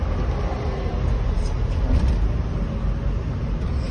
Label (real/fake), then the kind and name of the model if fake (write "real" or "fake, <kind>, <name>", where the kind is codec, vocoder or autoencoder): real